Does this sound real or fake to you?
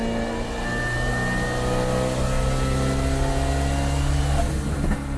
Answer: real